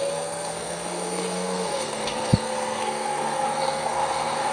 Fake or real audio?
fake